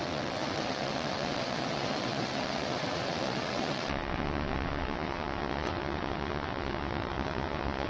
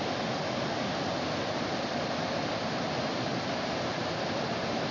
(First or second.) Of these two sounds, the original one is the second